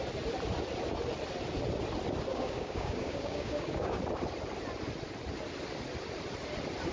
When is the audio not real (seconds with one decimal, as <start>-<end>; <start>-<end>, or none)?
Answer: 2.3-4.0